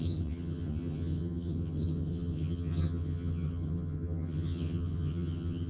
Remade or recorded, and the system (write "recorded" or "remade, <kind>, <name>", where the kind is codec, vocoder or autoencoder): remade, vocoder, HiFi-GAN